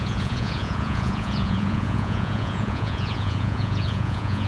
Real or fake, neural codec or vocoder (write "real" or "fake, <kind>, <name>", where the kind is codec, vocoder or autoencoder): fake, vocoder, Vocos